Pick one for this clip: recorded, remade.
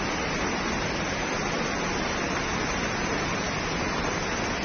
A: recorded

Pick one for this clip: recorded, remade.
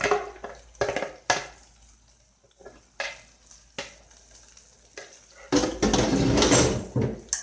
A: recorded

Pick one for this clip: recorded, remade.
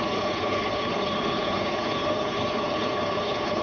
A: remade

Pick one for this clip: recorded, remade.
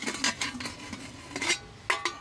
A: recorded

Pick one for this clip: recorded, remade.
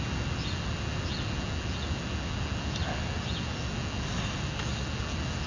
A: recorded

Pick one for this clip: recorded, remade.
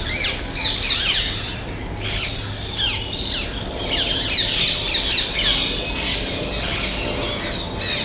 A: recorded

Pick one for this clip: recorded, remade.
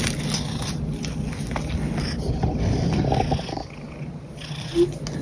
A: recorded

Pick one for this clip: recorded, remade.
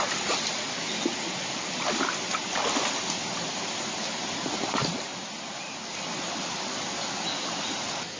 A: recorded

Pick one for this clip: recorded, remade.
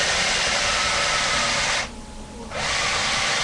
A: recorded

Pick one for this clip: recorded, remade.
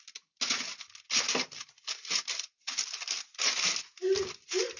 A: recorded